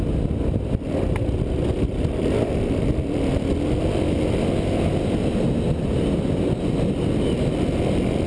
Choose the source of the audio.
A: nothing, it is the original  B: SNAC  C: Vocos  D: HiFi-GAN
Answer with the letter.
A